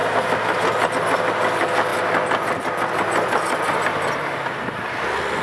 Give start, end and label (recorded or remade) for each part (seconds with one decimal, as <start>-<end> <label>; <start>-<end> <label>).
0.0-5.4 recorded